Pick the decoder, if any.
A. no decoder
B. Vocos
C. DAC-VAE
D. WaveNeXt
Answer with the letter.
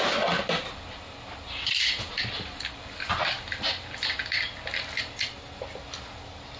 A